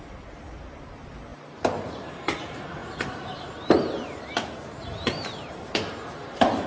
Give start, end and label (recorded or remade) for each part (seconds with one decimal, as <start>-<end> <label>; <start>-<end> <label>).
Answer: 0.0-6.7 remade